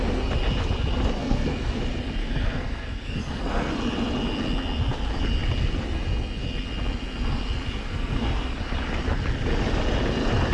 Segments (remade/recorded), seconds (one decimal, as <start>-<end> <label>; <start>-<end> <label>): 0.0-1.2 recorded; 1.2-1.8 remade; 1.8-2.2 recorded; 2.2-3.7 remade; 3.7-7.8 recorded; 7.8-8.4 remade; 8.4-10.5 recorded